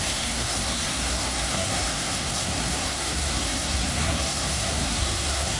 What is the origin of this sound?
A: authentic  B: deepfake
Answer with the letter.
B